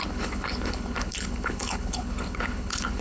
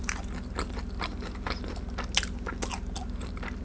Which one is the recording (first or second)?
second